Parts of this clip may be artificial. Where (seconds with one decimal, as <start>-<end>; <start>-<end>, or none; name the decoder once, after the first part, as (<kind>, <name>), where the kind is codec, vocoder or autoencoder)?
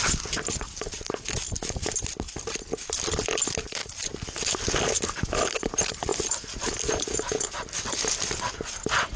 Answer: none